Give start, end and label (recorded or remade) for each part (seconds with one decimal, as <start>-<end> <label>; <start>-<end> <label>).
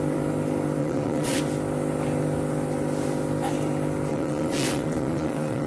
0.0-0.8 recorded; 0.8-1.4 remade; 1.4-4.1 recorded; 4.1-5.7 remade